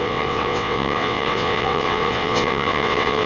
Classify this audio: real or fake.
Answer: fake